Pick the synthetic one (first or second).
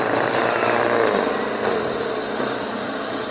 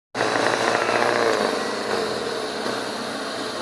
first